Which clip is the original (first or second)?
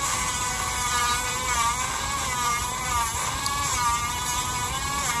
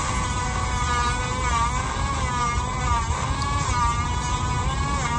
second